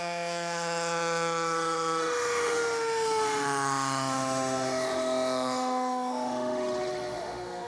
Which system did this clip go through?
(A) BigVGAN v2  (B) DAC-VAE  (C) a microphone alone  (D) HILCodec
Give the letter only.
B